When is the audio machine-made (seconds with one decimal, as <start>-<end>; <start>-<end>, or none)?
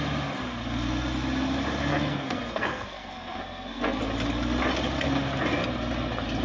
1.9-4.0